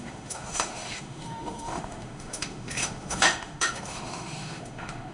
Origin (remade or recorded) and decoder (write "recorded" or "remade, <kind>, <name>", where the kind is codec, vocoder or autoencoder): remade, autoencoder, DAC-VAE